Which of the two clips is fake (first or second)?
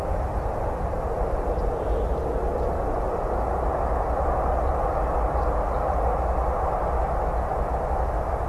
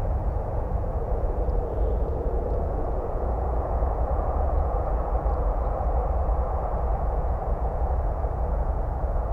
second